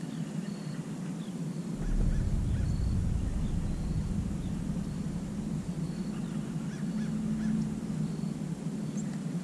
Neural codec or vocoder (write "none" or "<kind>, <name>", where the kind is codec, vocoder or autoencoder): none